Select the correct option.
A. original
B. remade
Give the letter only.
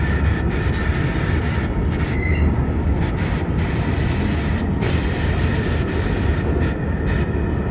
A